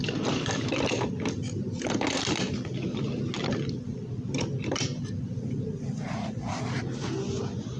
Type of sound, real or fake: real